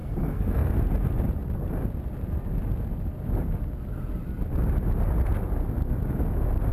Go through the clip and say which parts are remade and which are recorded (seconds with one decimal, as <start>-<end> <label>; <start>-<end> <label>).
0.0-0.7 remade; 0.7-6.7 recorded